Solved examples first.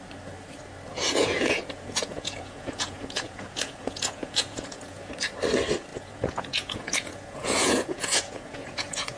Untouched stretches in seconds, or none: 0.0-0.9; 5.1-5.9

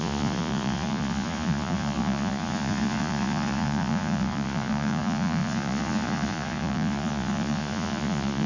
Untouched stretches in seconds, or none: none

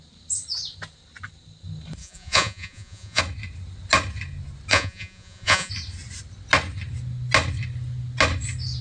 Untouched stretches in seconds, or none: 0.0-2.0; 3.2-4.7; 5.7-8.8

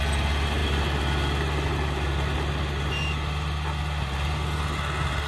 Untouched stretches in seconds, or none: 0.0-5.3

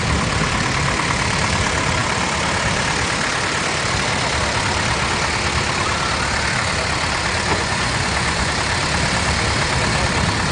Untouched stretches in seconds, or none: 0.0-7.5; 8.5-10.5

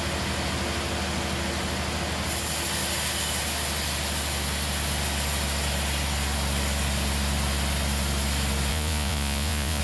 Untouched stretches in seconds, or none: 0.0-8.7

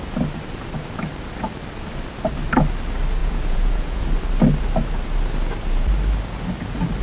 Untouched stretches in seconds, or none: 0.0-3.2; 4.0-7.0

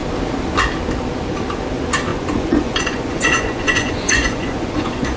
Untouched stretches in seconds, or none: 0.0-2.1